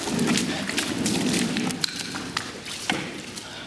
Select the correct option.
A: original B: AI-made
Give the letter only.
A